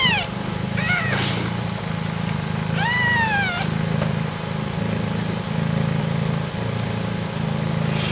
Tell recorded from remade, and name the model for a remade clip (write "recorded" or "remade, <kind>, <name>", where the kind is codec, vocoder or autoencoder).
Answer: recorded